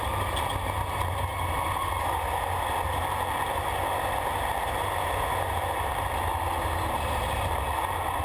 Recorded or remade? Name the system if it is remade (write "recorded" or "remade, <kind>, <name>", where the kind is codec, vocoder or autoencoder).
recorded